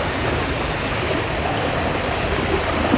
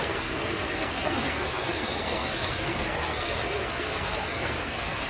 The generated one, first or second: second